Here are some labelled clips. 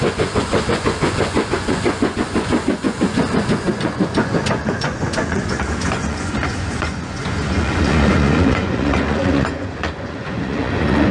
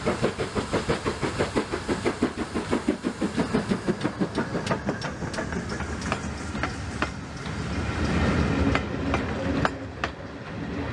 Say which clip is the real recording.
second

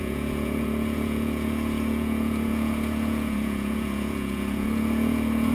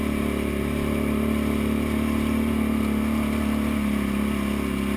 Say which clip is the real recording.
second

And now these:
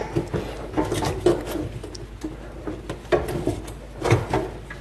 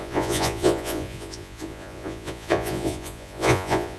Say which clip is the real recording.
first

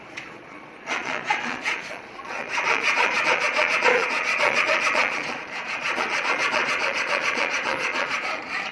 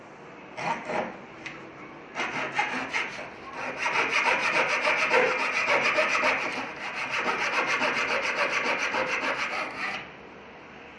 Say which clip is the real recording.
second